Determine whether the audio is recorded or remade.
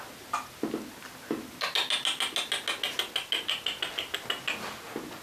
recorded